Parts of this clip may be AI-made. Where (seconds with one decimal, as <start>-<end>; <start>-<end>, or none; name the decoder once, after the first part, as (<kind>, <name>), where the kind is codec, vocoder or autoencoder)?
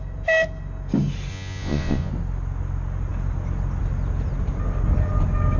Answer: 1.3-2.1 (vocoder, Vocos)